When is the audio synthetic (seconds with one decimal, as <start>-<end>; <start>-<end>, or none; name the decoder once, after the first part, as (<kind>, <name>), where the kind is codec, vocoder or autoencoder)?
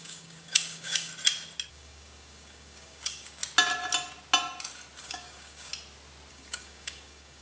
0.0-1.1 (codec, DAC); 1.7-3.4; 5.0-5.7; 6.3-7.4